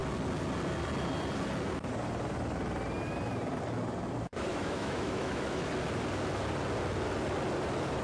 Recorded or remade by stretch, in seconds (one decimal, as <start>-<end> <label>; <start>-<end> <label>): 0.0-4.5 recorded; 4.5-5.7 remade; 5.7-8.0 recorded